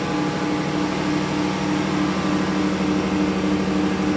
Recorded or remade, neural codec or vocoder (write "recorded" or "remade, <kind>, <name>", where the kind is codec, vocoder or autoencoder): recorded